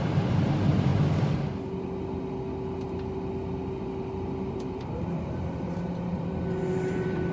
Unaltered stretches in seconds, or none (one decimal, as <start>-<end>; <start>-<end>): 0.9-4.5